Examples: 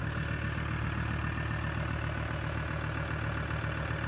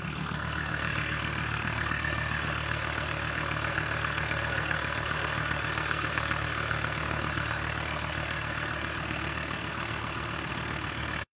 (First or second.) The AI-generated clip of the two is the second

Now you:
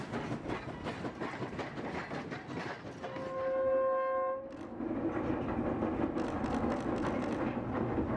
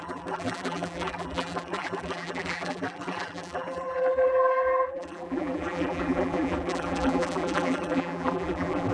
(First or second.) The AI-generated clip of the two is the second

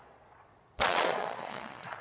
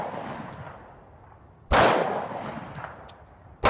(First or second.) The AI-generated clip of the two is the first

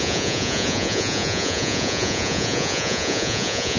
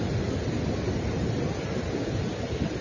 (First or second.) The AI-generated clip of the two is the first